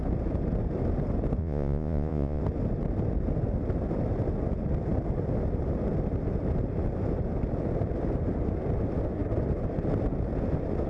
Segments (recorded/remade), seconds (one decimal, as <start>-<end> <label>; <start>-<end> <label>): 0.0-1.4 recorded; 1.4-2.4 remade; 2.4-10.9 recorded